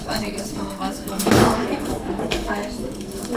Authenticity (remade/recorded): remade